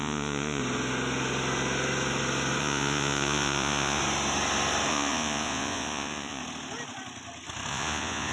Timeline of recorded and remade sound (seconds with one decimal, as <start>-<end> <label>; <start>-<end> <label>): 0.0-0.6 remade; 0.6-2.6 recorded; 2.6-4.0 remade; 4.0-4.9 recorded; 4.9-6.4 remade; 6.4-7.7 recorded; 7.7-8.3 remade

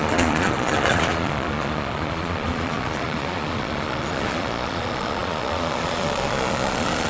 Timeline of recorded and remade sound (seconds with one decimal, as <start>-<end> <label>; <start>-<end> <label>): 0.0-7.1 remade

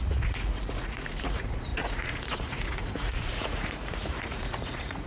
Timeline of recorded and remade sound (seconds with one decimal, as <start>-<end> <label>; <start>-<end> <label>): 0.0-5.1 remade

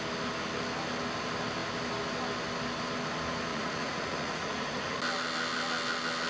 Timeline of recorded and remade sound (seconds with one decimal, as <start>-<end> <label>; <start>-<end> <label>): 0.0-3.5 recorded; 3.5-5.0 remade; 5.0-6.3 recorded